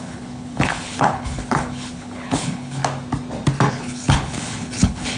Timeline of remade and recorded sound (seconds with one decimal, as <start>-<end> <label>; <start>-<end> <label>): 0.0-2.8 remade; 2.8-3.7 recorded; 3.7-5.2 remade